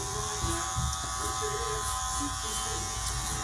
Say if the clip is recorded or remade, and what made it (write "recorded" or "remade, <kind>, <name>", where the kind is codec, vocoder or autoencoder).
recorded